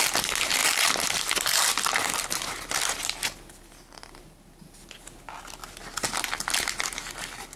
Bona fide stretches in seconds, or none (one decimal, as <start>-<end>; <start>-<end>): 0.0-7.6